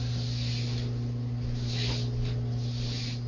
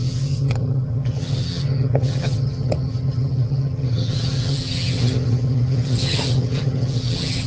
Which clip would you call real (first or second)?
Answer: first